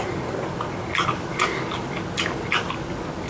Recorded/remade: recorded